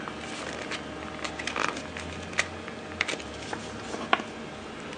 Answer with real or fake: real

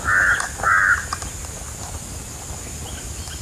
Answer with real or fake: real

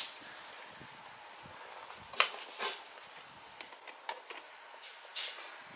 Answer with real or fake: real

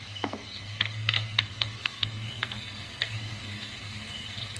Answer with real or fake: fake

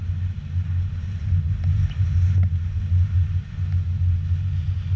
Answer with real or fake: real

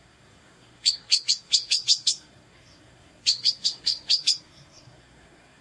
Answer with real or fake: fake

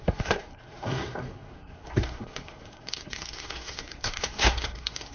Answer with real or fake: fake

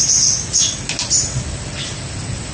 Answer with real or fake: real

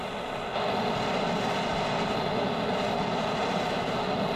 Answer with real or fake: real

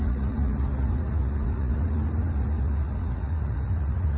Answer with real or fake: fake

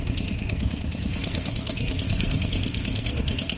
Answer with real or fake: fake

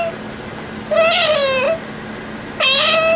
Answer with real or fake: real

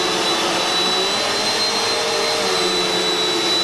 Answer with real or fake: real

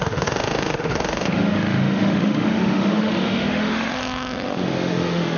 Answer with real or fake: fake